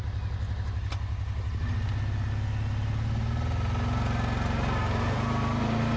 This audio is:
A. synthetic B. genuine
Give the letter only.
B